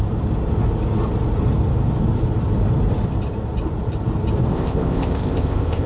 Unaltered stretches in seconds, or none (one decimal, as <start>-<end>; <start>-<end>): 0.0-4.5